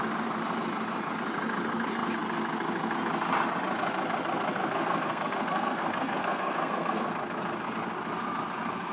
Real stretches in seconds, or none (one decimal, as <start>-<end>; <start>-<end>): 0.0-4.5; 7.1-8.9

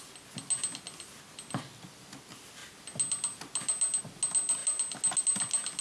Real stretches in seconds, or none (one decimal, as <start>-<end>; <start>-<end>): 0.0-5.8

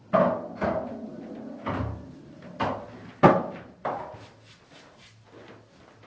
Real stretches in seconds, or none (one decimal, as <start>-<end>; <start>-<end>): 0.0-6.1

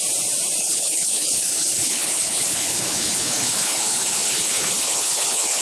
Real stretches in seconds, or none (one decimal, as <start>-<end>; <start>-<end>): 0.0-0.6

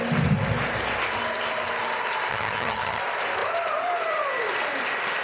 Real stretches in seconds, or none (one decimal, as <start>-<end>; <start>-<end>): 0.0-2.3; 3.0-5.2

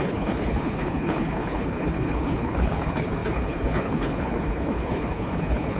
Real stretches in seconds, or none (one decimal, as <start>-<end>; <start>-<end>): none

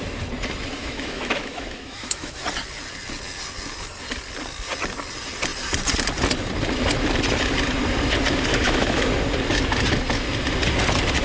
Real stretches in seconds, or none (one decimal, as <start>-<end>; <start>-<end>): 0.0-0.8; 2.4-8.5; 9.1-11.2

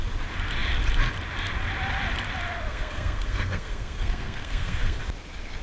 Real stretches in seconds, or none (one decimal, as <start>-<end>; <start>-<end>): 0.0-2.7; 5.0-5.6